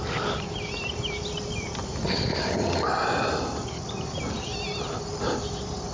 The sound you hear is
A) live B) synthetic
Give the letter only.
A